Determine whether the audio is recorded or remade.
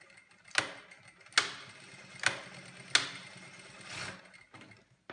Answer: recorded